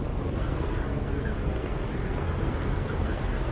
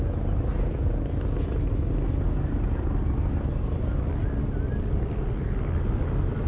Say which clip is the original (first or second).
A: second